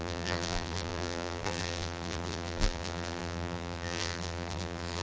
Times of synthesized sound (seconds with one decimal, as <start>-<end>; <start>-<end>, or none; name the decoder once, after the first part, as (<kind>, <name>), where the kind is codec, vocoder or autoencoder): 0.0-5.0 (vocoder, BigVGAN v2)